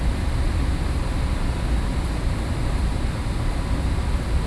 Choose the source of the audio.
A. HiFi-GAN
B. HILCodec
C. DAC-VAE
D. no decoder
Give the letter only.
D